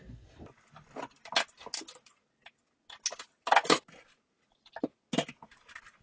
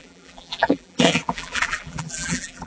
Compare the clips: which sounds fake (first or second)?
second